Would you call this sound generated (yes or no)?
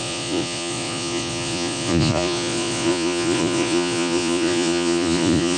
yes